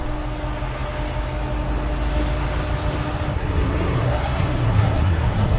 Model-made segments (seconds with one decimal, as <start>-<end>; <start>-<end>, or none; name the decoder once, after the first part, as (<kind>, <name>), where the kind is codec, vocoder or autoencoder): 3.3-5.6 (codec, SNAC)